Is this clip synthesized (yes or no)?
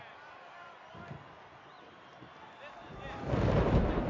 no